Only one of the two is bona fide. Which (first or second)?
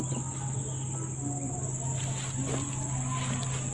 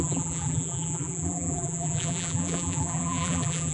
first